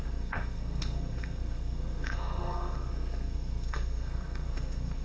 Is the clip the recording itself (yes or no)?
no